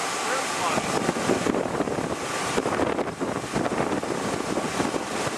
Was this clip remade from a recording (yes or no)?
no